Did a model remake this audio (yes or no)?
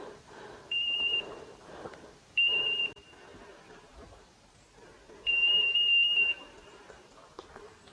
yes